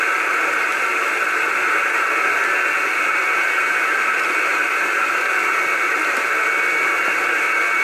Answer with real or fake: real